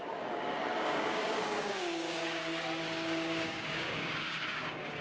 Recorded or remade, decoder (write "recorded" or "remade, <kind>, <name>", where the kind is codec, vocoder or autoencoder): remade, codec, DAC